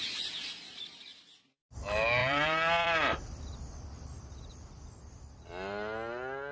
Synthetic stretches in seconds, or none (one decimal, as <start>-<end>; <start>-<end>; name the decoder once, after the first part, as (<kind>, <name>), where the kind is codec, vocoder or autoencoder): 2.2-3.4 (vocoder, BigVGAN v2)